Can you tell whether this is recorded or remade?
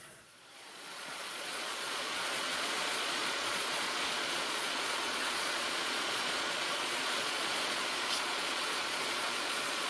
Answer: remade